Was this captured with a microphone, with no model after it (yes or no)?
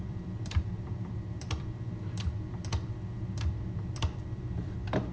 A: no